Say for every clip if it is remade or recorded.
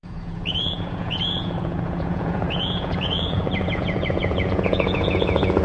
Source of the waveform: remade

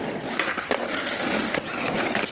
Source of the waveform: recorded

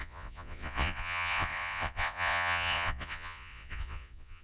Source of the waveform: remade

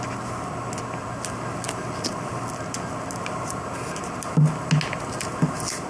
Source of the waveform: recorded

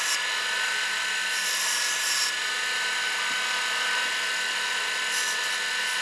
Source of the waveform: recorded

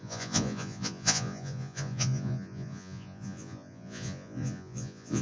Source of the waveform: remade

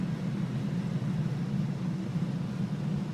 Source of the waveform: recorded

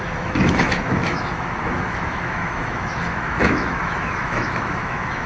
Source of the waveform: remade